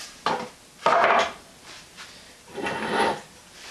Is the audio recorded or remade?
recorded